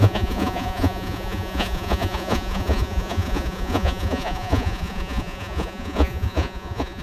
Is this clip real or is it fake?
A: fake